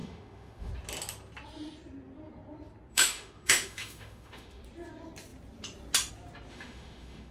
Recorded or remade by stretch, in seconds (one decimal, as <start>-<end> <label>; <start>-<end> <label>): 0.0-0.7 remade; 0.7-2.9 recorded; 2.9-4.6 remade; 4.6-6.5 recorded; 6.5-7.3 remade

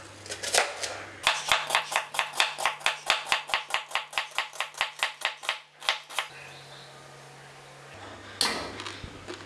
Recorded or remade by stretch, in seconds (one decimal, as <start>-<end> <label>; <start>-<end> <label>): 0.0-9.5 recorded

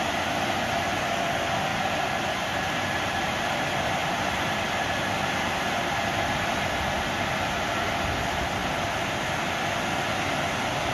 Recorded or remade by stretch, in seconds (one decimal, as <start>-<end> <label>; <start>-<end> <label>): 0.0-1.7 recorded; 1.7-3.4 remade; 3.4-4.0 recorded; 4.0-6.6 remade; 6.6-10.9 recorded